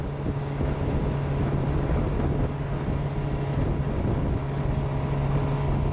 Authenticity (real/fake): real